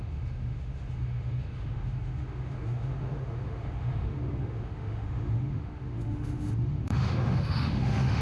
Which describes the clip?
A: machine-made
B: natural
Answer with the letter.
A